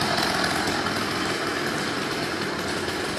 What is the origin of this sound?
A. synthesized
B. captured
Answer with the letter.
B